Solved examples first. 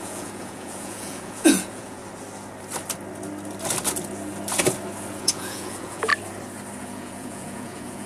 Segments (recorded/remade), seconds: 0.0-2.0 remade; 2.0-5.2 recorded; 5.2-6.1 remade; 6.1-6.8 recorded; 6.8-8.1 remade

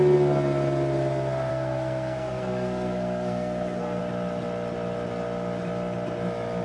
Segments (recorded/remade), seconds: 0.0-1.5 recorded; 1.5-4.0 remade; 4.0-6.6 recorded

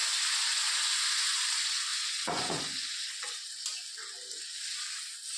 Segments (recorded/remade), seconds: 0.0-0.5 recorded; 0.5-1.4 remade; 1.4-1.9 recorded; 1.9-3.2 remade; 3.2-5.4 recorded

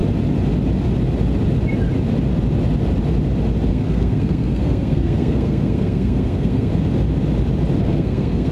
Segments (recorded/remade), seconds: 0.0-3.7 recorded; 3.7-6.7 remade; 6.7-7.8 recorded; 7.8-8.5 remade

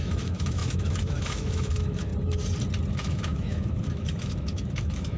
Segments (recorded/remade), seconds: 0.0-2.1 remade; 2.1-2.9 recorded; 2.9-5.2 remade